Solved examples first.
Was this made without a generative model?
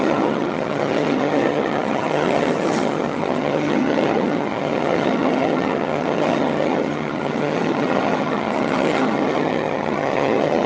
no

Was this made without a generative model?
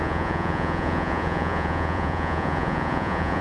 no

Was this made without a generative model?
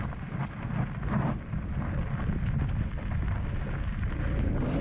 yes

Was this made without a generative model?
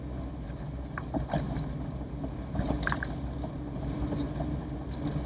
yes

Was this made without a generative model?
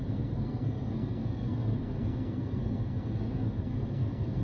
no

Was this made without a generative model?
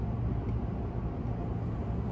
yes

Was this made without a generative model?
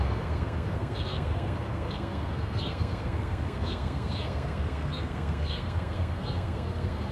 no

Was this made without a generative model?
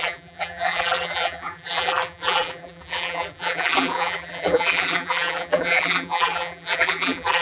no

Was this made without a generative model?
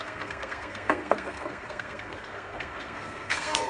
no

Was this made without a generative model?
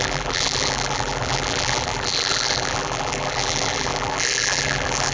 no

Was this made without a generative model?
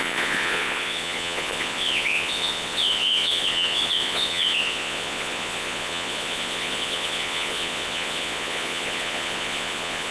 no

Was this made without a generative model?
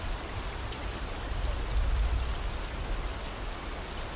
yes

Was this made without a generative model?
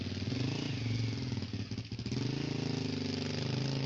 yes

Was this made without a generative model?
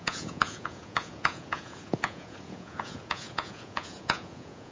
no